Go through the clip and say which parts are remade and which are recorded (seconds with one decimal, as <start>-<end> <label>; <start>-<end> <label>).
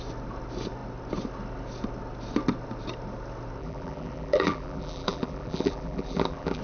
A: 0.0-3.6 recorded; 3.6-6.6 remade